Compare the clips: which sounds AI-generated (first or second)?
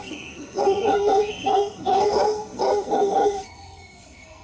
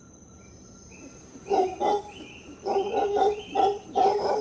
first